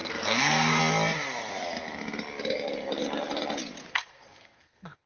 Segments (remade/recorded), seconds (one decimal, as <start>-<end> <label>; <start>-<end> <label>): 0.0-0.8 remade; 0.8-3.9 recorded; 3.9-5.1 remade